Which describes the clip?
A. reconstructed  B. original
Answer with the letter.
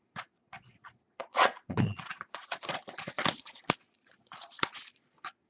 A